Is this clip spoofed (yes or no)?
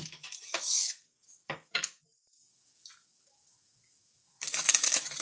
yes